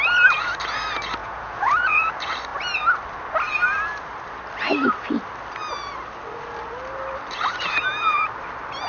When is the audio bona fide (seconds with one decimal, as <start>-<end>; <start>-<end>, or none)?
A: 0.0-1.2; 2.1-8.9